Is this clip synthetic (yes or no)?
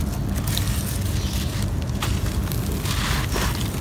no